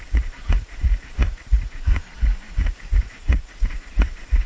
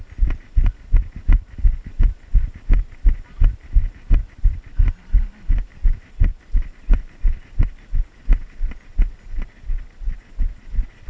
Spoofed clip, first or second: first